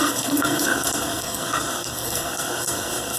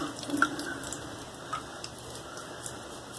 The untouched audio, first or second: second